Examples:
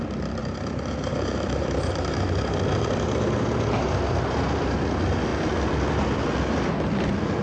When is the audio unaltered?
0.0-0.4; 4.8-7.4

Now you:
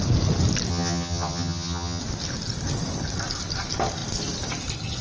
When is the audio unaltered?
0.0-0.7; 2.0-5.0

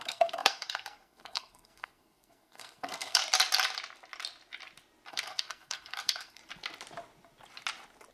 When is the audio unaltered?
3.2-5.1; 6.4-8.1

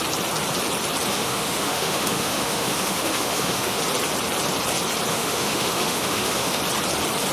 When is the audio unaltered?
0.0-1.1; 3.8-5.1; 6.6-7.3

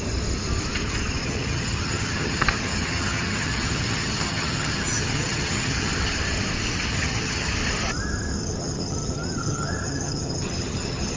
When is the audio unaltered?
0.0-1.2; 5.9-6.9; 7.5-8.4